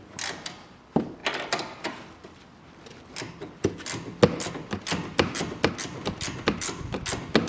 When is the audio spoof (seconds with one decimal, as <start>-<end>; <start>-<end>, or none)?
none